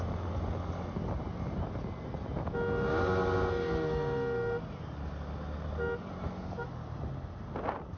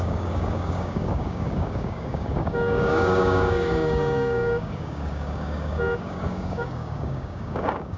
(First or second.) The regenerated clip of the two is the second